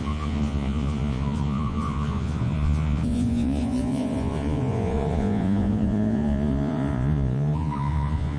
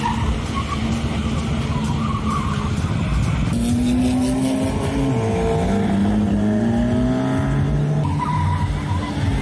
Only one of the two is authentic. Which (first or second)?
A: second